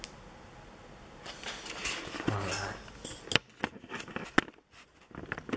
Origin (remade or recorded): recorded